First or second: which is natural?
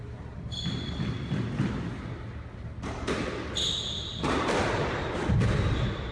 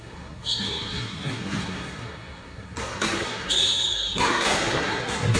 first